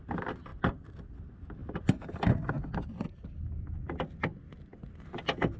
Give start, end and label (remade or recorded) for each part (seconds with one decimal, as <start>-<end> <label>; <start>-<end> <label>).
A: 0.0-5.6 recorded